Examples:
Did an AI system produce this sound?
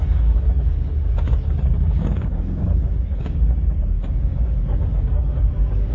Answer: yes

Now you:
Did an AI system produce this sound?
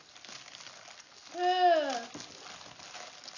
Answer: no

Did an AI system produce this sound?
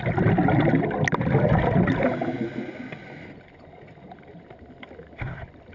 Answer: no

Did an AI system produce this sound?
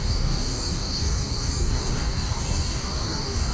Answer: yes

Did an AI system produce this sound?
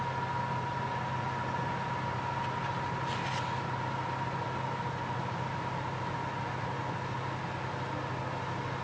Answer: no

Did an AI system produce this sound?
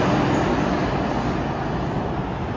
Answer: no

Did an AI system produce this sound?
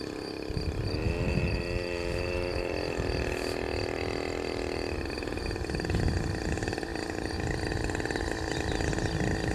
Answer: no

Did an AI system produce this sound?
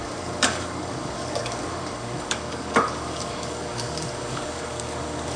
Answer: yes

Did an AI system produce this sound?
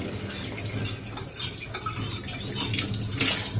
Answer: no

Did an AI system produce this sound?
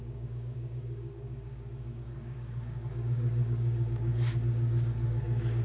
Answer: yes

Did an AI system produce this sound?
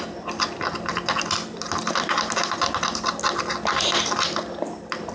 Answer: no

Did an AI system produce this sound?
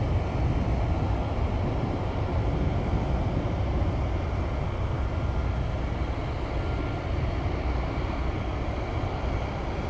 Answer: no